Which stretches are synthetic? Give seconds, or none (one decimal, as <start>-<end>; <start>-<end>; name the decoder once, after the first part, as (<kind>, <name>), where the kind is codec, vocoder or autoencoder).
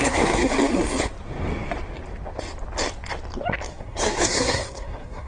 0.0-0.5 (codec, SNAC); 3.7-5.3